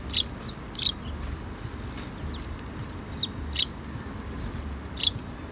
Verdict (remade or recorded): recorded